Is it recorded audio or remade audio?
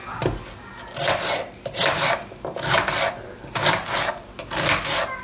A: recorded